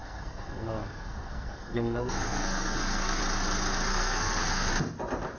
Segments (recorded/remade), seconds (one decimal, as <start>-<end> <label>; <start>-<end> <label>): 0.0-3.2 remade; 3.2-3.9 recorded; 3.9-4.7 remade; 4.7-5.4 recorded